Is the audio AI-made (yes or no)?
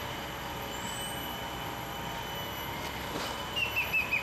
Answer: no